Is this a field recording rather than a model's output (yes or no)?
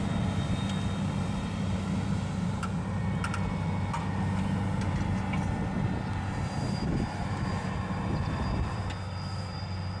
yes